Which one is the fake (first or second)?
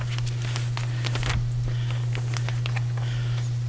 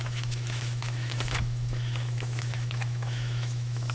second